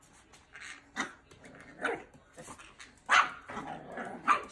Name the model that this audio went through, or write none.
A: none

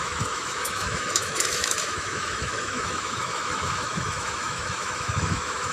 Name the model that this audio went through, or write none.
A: autoencoder, DAC-VAE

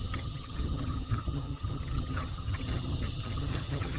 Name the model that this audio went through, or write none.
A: vocoder, HiFi-GAN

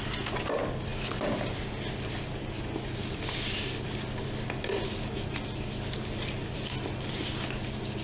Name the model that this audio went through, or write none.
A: none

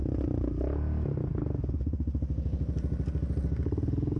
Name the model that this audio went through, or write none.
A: none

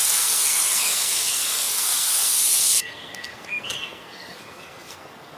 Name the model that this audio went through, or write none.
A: codec, SNAC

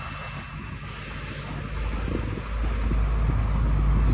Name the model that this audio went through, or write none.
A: none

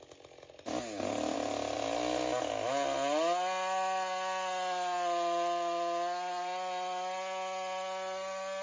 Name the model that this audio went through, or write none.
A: none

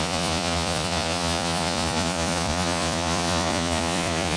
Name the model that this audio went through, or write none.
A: vocoder, Vocos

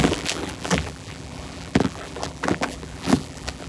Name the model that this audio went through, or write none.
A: vocoder, BigVGAN v2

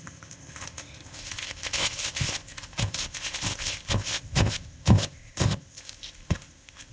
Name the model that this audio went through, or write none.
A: codec, ZipCodec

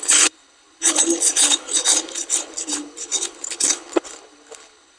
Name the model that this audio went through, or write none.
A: codec, HILCodec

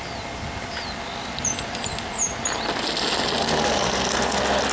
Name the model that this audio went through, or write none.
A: none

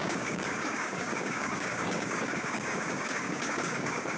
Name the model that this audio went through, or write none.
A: codec, DAC